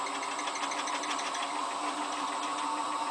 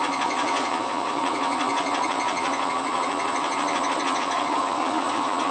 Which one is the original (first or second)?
first